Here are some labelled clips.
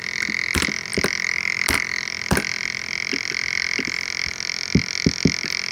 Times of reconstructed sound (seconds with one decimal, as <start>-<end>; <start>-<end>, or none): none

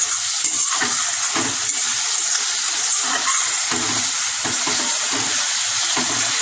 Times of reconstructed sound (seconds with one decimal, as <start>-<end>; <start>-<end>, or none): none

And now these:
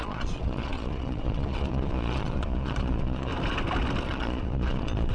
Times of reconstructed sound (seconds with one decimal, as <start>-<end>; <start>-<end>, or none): 0.0-3.3; 4.0-5.1

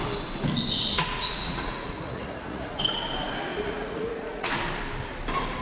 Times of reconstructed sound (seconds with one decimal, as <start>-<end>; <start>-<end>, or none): 0.9-2.8; 3.5-4.6